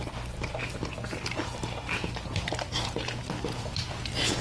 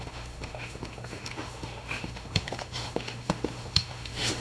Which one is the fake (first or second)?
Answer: second